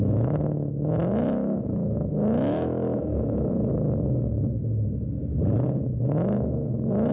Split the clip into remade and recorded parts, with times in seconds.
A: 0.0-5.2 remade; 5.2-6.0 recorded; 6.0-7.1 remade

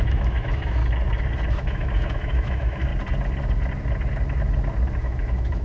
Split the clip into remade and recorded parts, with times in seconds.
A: 0.0-0.8 remade; 0.8-1.5 recorded; 1.5-2.9 remade; 2.9-5.0 recorded; 5.0-5.6 remade

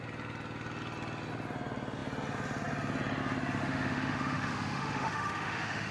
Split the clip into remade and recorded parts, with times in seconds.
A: 0.0-3.6 recorded; 3.6-5.9 remade

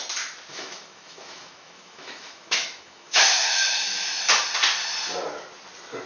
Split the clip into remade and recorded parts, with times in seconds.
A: 0.0-0.5 recorded; 0.5-4.2 remade; 4.2-6.1 recorded

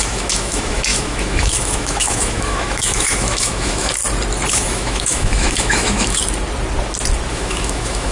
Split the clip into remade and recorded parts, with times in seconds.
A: 0.0-4.0 remade; 4.0-4.5 recorded; 4.5-6.2 remade; 6.2-7.3 recorded; 7.3-8.1 remade

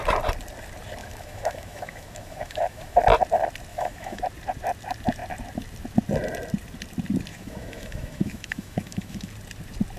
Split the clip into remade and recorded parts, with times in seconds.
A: 0.0-1.0 recorded; 1.0-3.0 remade; 3.0-3.7 recorded; 3.7-4.2 remade; 4.2-7.3 recorded; 7.3-9.3 remade; 9.3-10.0 recorded

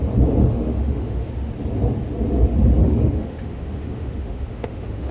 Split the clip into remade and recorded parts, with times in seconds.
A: 0.0-0.4 recorded; 0.4-1.3 remade; 1.3-2.8 recorded; 2.8-5.1 remade